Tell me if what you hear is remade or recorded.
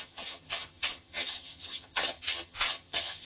remade